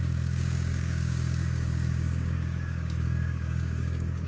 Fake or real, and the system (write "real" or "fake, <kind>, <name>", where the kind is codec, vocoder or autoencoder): fake, codec, DAC